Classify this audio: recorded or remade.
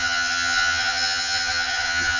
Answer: remade